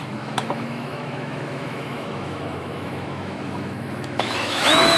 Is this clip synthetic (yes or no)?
yes